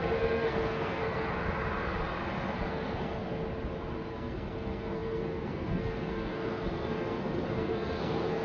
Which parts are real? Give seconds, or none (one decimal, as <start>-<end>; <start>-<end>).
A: 1.4-2.6; 3.2-4.1